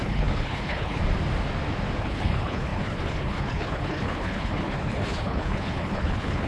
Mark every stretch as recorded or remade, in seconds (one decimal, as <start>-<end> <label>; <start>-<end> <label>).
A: 0.0-1.0 remade; 1.0-2.0 recorded; 2.0-6.5 remade